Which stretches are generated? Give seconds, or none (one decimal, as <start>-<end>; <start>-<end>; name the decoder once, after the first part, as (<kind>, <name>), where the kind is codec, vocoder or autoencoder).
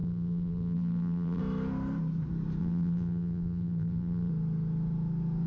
0.0-1.4 (vocoder, BigVGAN v2); 2.6-4.3